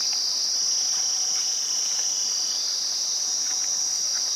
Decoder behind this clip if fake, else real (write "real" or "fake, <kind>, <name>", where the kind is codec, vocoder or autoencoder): real